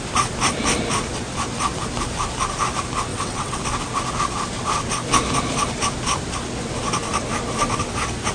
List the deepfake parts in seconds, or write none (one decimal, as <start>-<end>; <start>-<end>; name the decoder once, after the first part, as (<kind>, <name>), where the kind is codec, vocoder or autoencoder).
3.1-3.6 (vocoder, WaveNeXt)